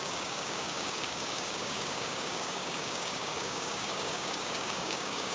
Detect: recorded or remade remade